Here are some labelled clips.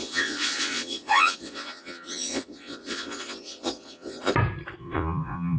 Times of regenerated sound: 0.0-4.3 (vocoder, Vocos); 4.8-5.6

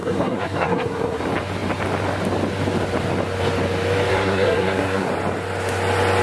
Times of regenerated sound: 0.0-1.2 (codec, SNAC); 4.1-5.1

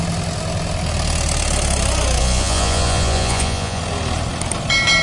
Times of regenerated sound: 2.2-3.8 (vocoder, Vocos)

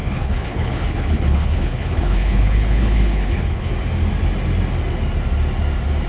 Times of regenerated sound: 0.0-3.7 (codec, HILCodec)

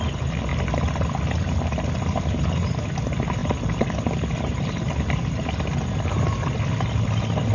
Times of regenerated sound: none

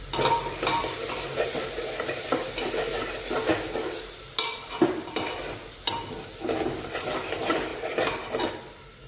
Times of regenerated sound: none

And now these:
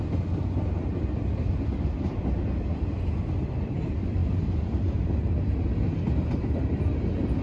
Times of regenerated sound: none